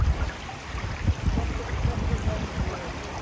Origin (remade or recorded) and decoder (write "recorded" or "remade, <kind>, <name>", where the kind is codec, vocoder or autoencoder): recorded